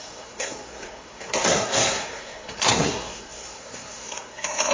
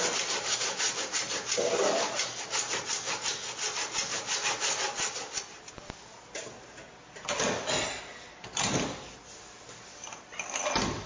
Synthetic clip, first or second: first